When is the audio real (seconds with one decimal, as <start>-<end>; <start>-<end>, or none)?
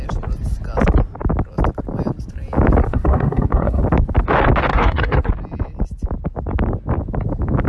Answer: 0.0-2.9; 3.8-4.7; 5.3-7.7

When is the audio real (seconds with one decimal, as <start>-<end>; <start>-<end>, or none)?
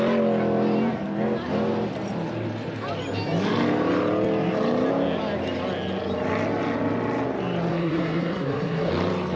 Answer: 0.0-7.7; 8.9-9.4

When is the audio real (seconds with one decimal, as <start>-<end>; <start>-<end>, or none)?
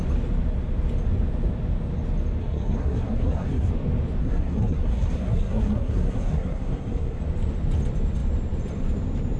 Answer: 0.0-2.4; 3.7-4.2; 7.2-9.4